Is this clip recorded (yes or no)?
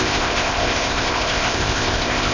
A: no